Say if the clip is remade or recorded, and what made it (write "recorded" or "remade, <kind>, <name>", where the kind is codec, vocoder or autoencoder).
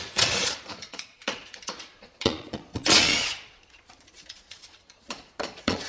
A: remade, vocoder, Vocos